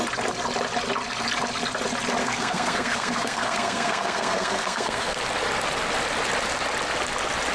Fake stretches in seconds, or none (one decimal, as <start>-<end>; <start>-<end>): 2.2-5.2